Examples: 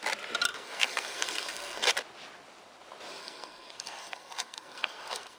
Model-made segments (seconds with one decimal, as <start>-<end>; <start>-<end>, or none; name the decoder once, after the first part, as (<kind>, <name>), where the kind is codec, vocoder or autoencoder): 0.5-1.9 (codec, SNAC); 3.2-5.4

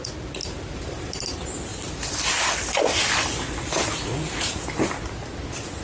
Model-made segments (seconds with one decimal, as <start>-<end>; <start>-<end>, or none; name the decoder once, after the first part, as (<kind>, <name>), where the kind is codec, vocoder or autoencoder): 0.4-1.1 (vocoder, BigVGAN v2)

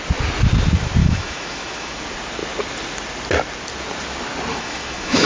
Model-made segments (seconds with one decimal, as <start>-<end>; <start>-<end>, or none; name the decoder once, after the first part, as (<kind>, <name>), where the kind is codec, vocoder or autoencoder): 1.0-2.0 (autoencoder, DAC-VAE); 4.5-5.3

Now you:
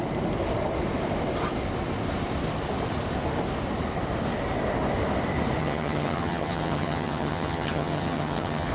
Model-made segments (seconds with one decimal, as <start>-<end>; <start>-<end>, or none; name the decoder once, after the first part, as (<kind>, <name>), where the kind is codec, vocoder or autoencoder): 5.6-8.7 (vocoder, HiFi-GAN)

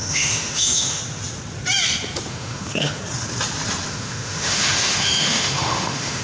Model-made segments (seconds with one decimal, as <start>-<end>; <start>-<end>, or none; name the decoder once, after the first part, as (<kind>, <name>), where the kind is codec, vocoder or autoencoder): 0.0-1.0 (autoencoder, DAC-VAE); 2.3-3.0; 3.9-6.2

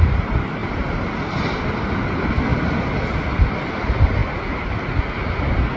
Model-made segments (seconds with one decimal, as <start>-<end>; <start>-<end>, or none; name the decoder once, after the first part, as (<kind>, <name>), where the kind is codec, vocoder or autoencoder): 2.5-3.8 (vocoder, BigVGAN v2)